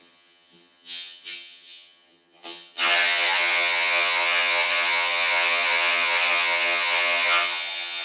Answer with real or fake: fake